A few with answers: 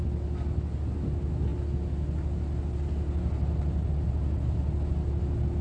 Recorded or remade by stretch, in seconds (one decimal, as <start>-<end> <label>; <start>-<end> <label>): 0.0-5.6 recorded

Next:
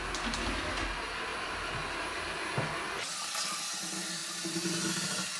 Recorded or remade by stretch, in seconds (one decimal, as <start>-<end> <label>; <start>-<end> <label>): 0.0-5.4 recorded

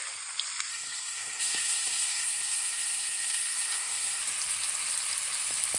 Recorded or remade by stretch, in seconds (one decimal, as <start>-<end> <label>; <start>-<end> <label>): 0.0-0.7 recorded; 0.7-4.2 remade; 4.2-5.8 recorded

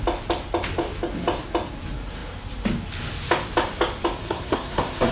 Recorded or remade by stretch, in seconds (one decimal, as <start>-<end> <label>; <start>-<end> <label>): 0.0-4.2 recorded; 4.2-5.1 remade